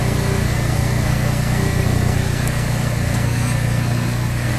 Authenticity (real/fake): fake